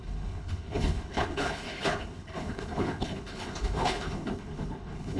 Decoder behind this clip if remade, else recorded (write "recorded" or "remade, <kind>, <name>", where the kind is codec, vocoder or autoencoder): remade, codec, HILCodec